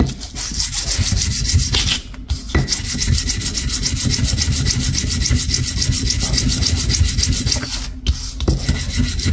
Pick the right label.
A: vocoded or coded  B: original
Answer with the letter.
B